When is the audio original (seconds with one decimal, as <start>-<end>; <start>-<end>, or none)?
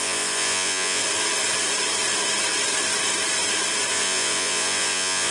1.0-3.9